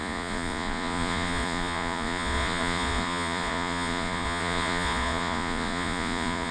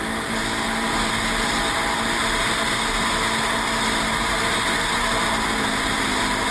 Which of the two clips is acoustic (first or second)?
second